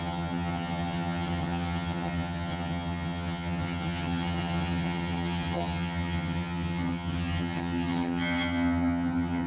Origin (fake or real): fake